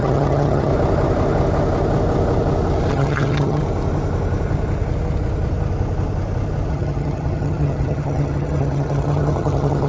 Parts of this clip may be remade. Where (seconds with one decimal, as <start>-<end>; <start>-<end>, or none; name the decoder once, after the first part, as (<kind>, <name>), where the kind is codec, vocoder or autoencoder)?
0.0-0.7 (vocoder, HiFi-GAN); 2.9-3.6; 6.7-9.9